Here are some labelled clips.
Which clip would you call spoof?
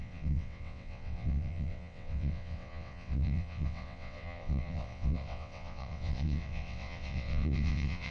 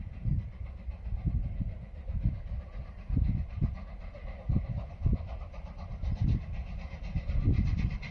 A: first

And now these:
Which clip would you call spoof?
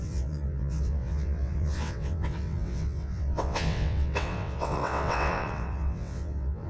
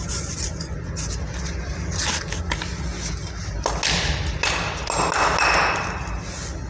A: first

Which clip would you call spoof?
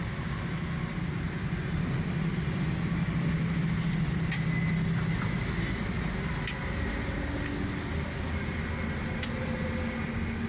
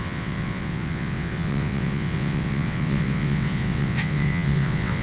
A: second